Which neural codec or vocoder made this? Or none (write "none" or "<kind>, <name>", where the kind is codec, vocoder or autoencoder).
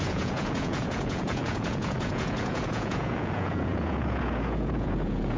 vocoder, Vocos